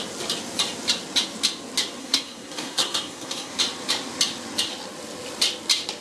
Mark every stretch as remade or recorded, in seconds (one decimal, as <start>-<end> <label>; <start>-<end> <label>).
0.0-2.0 recorded; 2.0-3.5 remade; 3.5-6.0 recorded